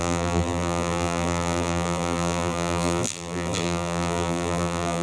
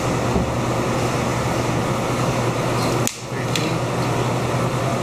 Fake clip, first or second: first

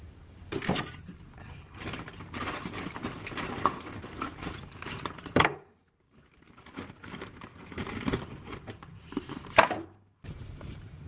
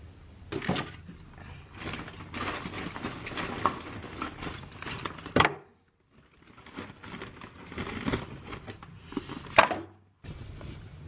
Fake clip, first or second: first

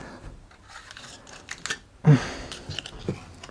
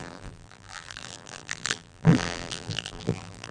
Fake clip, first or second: second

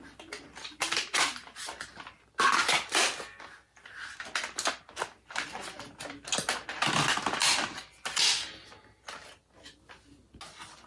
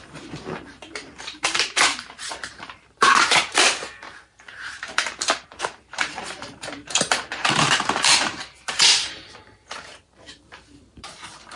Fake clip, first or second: second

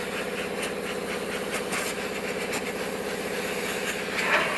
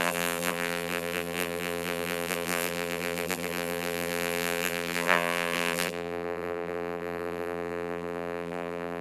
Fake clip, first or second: second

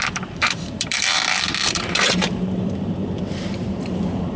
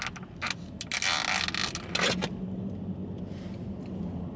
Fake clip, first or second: first